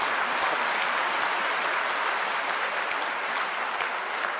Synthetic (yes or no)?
no